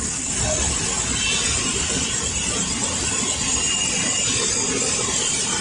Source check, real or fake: real